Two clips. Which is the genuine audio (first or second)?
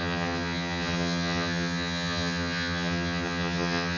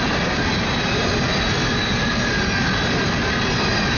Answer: second